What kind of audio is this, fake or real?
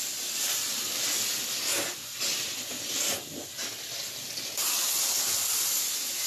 fake